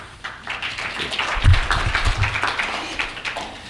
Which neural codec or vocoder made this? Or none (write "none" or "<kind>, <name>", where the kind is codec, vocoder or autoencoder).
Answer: vocoder, BigVGAN v2